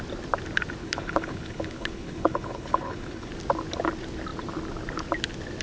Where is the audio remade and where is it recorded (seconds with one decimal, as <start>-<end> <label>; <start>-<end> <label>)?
0.0-0.8 recorded; 0.8-3.3 remade; 3.3-5.6 recorded

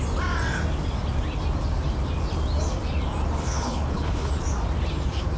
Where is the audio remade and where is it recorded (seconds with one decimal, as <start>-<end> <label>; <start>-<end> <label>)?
0.0-3.4 recorded; 3.4-4.3 remade; 4.3-5.4 recorded